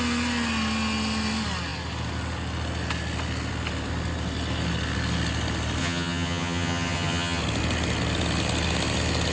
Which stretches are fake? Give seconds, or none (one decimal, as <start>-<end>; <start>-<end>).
5.8-7.4

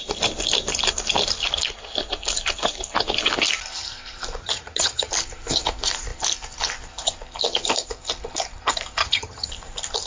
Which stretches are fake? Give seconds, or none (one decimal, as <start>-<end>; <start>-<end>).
4.4-5.1; 9.0-9.5

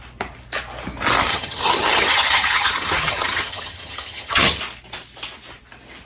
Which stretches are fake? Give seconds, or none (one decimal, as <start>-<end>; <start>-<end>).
1.3-4.6